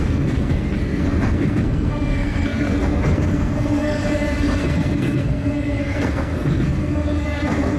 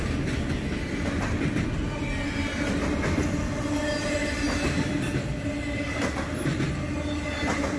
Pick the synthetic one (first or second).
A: first